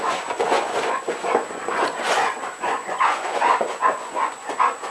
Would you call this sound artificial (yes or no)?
yes